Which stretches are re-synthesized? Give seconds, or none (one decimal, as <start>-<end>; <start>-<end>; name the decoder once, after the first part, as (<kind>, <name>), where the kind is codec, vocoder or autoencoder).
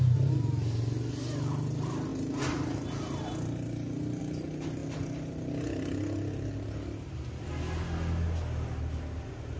none